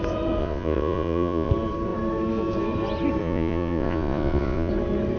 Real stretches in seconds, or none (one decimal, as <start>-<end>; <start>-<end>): 0.0-0.4; 1.5-3.2; 4.7-5.2